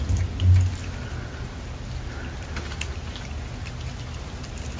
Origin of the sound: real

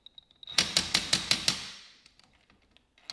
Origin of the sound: real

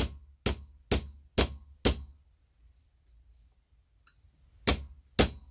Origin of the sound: real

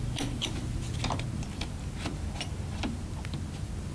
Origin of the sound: real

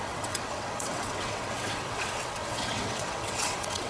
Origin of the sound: fake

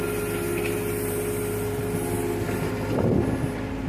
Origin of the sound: real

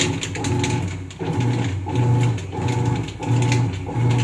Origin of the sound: real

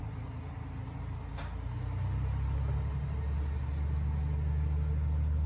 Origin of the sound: real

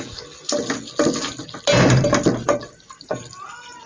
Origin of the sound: real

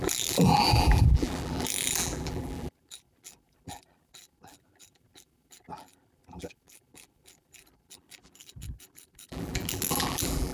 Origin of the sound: fake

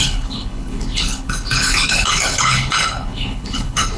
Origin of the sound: fake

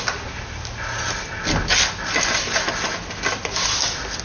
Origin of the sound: real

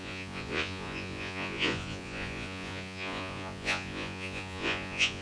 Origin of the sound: fake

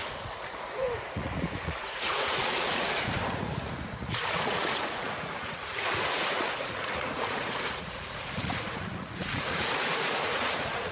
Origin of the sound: fake